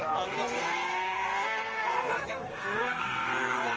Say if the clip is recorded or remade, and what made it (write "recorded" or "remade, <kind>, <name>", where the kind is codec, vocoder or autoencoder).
remade, codec, SNAC